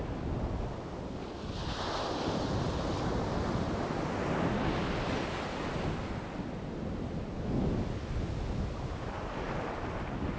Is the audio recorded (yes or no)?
yes